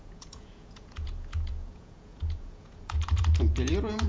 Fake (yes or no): yes